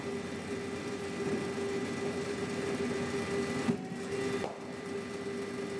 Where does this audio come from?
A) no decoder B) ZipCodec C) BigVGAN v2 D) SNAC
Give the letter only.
A